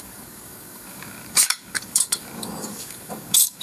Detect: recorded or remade remade